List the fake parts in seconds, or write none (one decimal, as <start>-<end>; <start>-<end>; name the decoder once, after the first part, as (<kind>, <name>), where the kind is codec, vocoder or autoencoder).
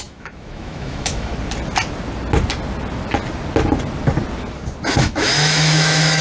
0.0-1.3 (autoencoder, DAC-VAE); 5.0-6.2